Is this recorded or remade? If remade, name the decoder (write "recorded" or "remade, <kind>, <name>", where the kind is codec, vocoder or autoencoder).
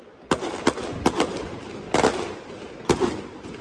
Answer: recorded